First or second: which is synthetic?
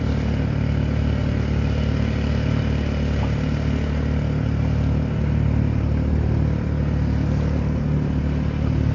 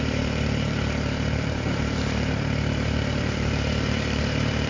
second